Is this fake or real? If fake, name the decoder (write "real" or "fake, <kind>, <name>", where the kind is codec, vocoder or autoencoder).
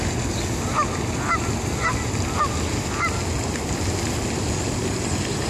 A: real